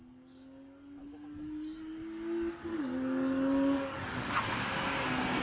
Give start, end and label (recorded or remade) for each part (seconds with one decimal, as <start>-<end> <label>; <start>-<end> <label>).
0.0-1.0 recorded; 1.0-2.0 remade; 2.0-2.7 recorded; 2.7-4.4 remade; 4.4-5.4 recorded